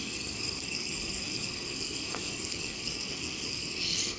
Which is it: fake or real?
fake